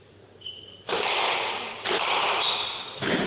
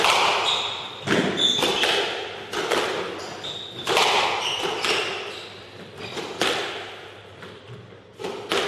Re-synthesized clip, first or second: first